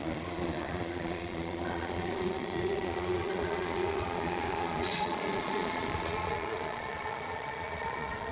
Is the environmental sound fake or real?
fake